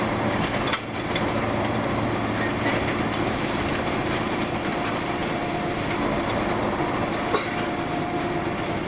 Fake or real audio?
real